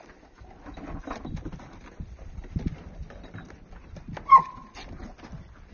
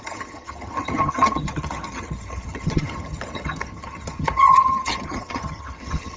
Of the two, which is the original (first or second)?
first